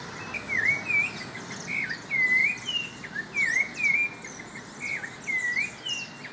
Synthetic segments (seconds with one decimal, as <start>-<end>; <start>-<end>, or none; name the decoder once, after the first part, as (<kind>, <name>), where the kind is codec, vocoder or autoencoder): none